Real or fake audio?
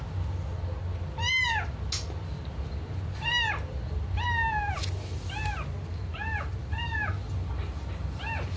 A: real